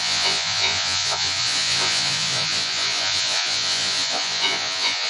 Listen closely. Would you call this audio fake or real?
fake